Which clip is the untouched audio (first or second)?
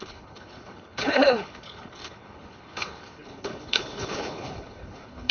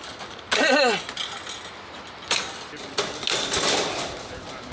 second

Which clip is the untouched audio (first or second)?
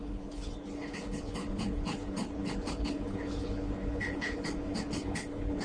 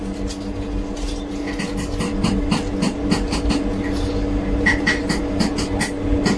second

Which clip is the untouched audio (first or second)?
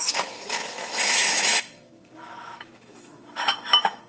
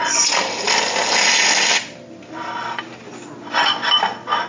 second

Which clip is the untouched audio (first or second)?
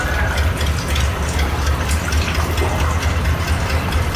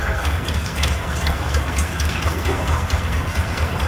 first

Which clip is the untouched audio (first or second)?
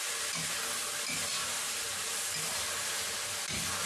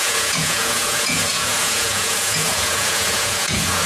first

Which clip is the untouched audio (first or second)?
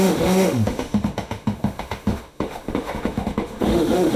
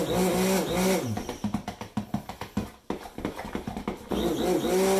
second